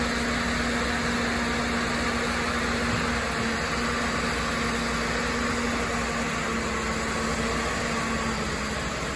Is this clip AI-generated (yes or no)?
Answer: no